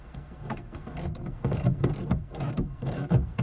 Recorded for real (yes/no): no